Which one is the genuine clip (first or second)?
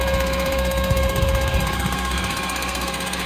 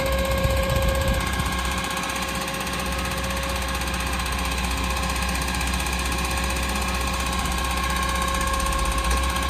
second